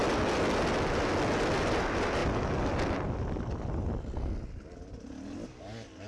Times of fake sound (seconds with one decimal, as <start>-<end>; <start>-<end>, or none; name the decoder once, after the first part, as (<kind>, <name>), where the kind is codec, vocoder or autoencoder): none